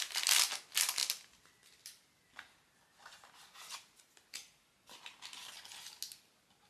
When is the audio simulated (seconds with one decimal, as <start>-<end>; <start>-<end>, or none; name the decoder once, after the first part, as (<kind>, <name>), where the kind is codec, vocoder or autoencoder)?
none